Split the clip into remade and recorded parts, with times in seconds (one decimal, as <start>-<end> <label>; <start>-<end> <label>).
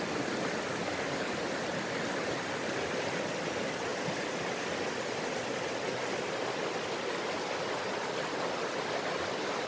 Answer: 0.0-0.7 recorded; 0.7-1.3 remade; 1.3-9.7 recorded